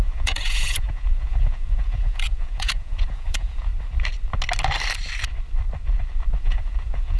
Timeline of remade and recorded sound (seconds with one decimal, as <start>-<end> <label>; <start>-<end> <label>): 0.0-3.7 remade; 3.7-6.4 recorded; 6.4-7.2 remade